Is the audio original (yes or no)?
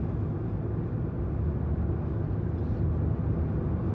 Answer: yes